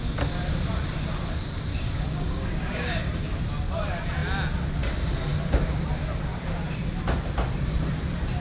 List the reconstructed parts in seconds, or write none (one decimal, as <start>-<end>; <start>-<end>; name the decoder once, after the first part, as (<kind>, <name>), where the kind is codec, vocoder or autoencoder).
1.7-3.2 (codec, DAC)

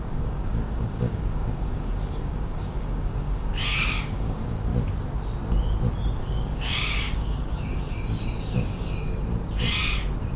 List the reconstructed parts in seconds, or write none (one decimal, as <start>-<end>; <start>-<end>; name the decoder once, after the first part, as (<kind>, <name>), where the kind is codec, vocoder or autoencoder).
0.0-4.7 (codec, DAC); 6.2-9.1

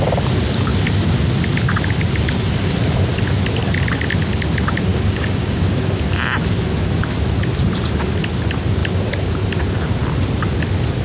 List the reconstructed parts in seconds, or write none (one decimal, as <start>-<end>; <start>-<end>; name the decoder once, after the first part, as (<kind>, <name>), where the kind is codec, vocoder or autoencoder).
4.9-5.9 (codec, DAC)

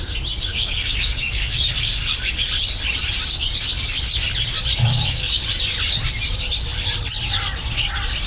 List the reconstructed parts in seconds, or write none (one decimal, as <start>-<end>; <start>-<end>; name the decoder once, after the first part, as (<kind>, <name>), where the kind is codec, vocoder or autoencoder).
0.5-2.4 (codec, DAC); 4.8-5.4

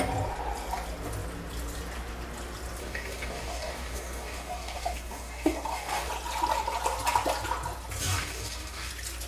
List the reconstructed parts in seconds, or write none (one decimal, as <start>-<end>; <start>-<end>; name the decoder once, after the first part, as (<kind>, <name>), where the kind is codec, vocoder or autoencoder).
2.8-6.1 (codec, DAC); 8.0-8.9

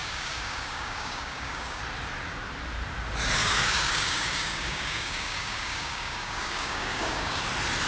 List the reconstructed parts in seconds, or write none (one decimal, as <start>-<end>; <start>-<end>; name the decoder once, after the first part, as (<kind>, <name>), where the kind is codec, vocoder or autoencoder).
0.0-1.8 (codec, DAC); 3.4-7.4

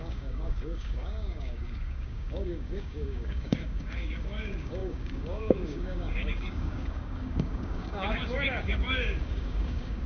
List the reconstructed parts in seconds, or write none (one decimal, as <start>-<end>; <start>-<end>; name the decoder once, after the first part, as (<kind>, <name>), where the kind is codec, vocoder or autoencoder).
0.0-10.1 (codec, DAC)